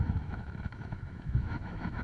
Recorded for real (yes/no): no